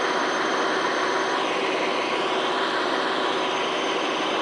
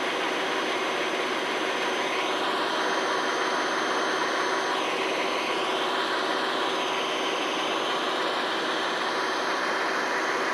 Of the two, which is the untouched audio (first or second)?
second